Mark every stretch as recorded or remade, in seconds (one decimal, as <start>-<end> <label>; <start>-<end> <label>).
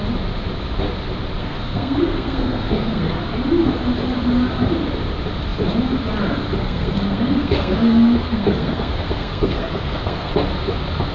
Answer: 0.0-1.4 recorded; 1.4-3.2 remade; 3.2-6.6 recorded; 6.6-10.3 remade; 10.3-11.1 recorded